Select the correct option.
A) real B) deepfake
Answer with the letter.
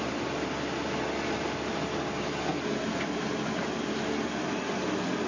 A